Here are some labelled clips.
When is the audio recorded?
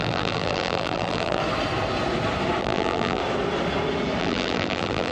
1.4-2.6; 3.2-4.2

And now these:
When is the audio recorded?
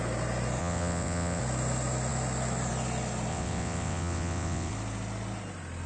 0.0-0.6; 1.4-3.3; 4.7-5.9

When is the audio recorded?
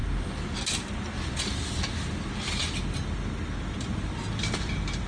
0.0-5.1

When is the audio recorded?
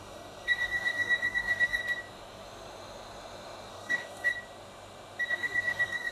1.8-3.7; 4.3-5.3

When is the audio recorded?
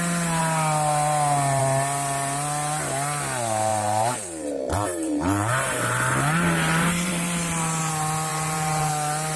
0.0-3.7; 7.9-8.3; 8.9-9.4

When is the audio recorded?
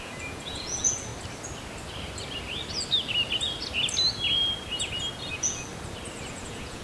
1.1-5.2; 5.7-6.3